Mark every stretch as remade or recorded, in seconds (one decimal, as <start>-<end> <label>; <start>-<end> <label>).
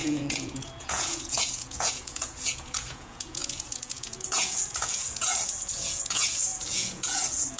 0.0-7.6 remade